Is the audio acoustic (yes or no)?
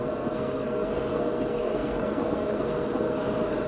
no